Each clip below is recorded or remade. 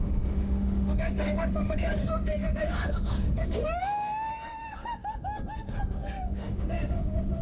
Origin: remade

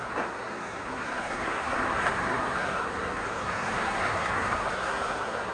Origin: remade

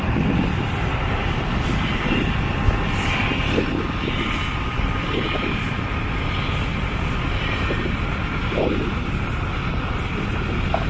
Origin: remade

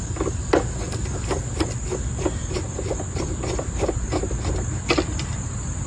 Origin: recorded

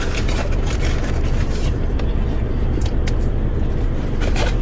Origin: remade